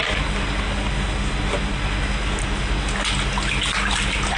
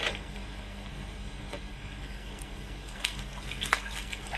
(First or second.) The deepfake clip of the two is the second